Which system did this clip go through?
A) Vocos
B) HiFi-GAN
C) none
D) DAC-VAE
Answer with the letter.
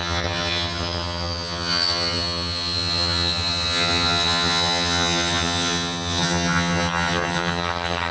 B